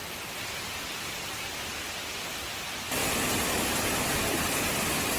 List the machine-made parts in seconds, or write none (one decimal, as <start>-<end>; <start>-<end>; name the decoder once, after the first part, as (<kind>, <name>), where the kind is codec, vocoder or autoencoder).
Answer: none